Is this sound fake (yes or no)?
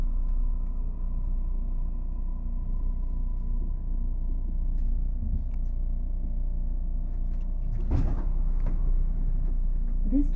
no